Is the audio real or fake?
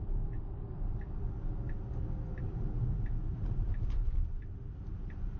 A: fake